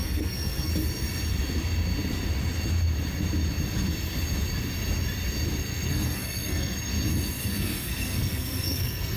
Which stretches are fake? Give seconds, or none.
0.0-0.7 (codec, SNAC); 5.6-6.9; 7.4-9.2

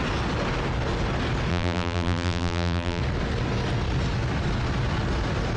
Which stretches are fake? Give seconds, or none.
1.5-3.0 (vocoder, BigVGAN v2)

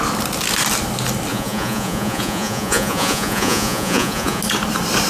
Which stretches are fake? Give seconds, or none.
1.3-4.4 (vocoder, Vocos)

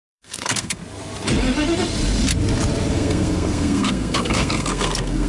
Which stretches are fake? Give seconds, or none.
0.0-0.8 (codec, SNAC); 2.9-5.3

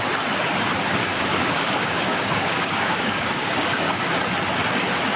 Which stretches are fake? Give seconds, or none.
1.1-4.2 (codec, DAC)

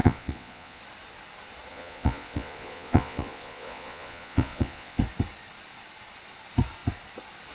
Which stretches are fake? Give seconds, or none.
0.0-0.8 (vocoder, Vocos); 1.7-5.0